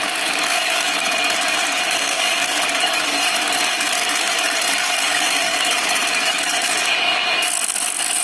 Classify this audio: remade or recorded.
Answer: remade